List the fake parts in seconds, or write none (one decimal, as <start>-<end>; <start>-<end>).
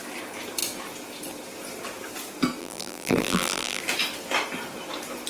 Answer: 2.6-3.8